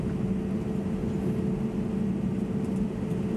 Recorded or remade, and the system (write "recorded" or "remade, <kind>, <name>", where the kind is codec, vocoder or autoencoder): recorded